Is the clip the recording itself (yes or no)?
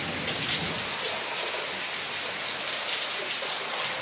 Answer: yes